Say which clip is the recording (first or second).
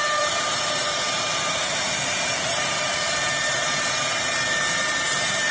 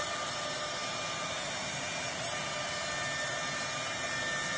second